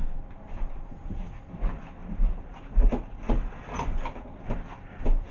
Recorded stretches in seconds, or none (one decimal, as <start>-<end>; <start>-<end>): 1.2-2.0; 3.3-5.3